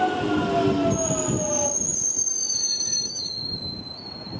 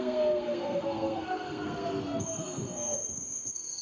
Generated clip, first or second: second